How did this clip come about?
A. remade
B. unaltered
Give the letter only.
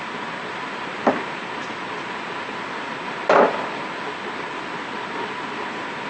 B